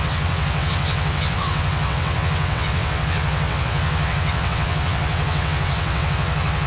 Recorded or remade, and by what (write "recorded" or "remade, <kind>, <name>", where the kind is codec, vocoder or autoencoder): remade, vocoder, WaveNeXt